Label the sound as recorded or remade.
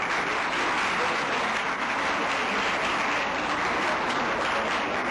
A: recorded